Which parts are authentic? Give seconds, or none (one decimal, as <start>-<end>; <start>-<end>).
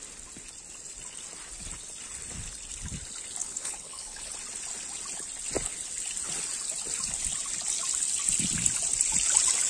0.0-3.4; 4.3-9.7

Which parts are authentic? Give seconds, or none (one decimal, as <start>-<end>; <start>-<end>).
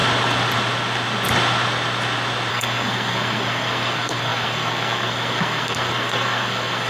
0.0-2.5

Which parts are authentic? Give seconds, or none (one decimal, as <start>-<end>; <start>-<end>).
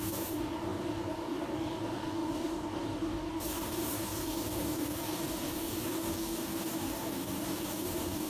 none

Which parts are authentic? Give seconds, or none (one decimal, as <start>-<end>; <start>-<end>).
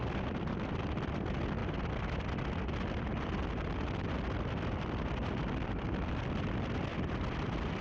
1.6-3.1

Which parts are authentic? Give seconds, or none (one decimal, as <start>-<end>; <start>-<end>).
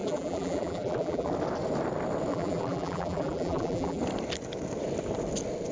1.3-2.3; 4.0-5.7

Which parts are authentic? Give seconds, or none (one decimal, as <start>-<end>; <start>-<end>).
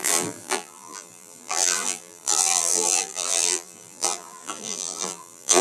none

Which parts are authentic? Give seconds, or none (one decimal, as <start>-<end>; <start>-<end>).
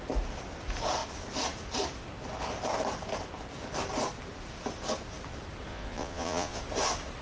0.0-5.7; 6.6-7.2